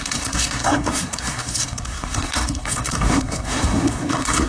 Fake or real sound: fake